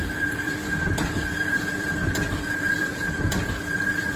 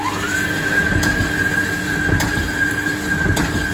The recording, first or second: second